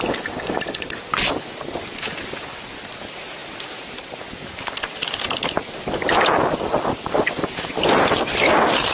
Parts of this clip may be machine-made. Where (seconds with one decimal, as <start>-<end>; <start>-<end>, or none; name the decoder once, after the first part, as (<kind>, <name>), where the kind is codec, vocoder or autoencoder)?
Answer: none